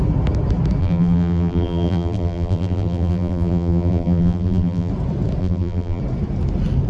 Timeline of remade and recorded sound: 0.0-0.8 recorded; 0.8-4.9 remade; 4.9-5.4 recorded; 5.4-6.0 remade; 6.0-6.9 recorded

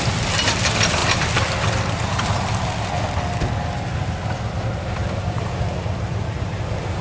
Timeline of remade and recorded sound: 0.0-1.0 remade; 1.0-5.2 recorded; 5.2-7.0 remade

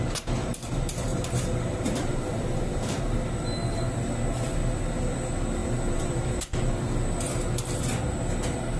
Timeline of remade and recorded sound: 0.0-1.1 recorded; 1.1-3.0 remade; 3.0-5.6 recorded; 5.6-6.7 remade; 6.7-8.8 recorded

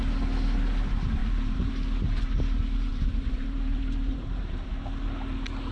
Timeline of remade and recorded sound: 0.0-1.2 recorded; 1.2-1.7 remade; 1.7-2.9 recorded; 2.9-4.7 remade; 4.7-5.7 recorded

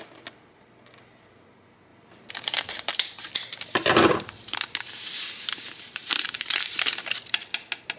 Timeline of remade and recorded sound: 0.0-1.9 recorded; 1.9-2.9 remade; 2.9-3.5 recorded; 3.5-7.5 remade; 7.5-8.0 recorded

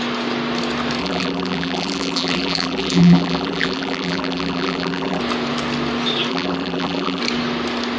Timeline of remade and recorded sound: 0.0-1.0 recorded; 1.0-5.2 remade; 5.2-6.3 recorded; 6.3-7.2 remade; 7.2-8.0 recorded

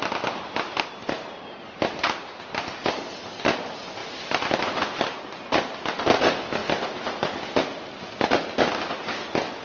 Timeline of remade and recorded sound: 0.0-4.0 recorded; 4.0-5.0 remade; 5.0-9.6 recorded

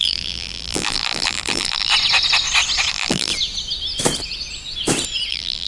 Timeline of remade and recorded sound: 0.0-1.9 remade; 1.9-2.9 recorded; 2.9-3.3 remade; 3.3-5.3 recorded; 5.3-5.7 remade